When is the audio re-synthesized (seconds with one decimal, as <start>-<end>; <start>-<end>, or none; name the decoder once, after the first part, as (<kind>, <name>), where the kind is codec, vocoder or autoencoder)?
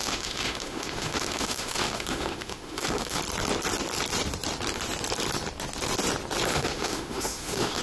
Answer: 0.0-3.2 (autoencoder, DAC-VAE); 6.5-7.8